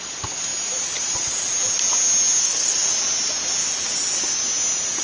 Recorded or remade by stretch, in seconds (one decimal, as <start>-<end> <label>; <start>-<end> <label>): 0.0-2.4 recorded; 2.4-2.9 remade; 2.9-5.0 recorded